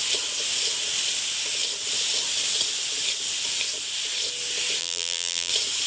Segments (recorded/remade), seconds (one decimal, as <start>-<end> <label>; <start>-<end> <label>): 0.0-4.8 recorded; 4.8-5.5 remade; 5.5-5.9 recorded